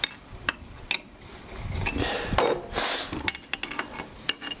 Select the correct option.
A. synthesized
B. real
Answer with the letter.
B